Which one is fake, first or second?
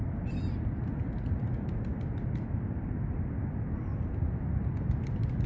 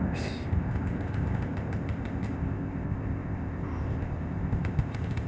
second